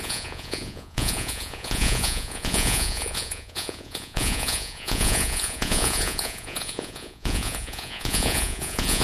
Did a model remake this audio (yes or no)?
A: yes